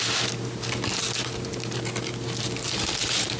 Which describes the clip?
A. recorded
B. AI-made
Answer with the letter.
A